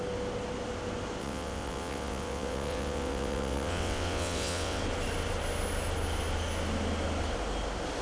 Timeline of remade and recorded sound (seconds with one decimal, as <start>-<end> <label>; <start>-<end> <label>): 0.0-1.2 recorded; 1.2-4.8 remade; 4.8-8.0 recorded